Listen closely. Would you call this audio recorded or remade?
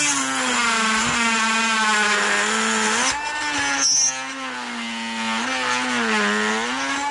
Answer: recorded